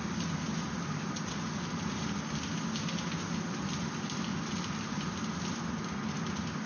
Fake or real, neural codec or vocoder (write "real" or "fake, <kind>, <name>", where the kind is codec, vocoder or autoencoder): real